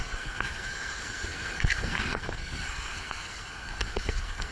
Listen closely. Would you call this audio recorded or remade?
remade